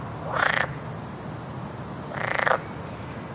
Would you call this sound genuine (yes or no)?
yes